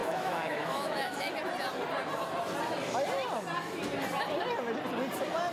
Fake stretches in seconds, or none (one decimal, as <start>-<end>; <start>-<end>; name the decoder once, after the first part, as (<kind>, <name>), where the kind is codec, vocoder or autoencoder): 0.0-1.3 (autoencoder, DAC-VAE)